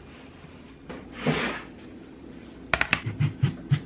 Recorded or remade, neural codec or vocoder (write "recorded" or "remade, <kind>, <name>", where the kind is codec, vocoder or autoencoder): recorded